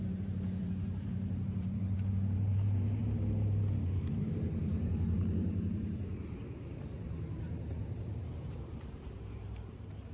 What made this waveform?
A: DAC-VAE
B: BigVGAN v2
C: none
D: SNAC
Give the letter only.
B